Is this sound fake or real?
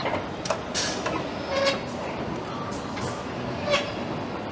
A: real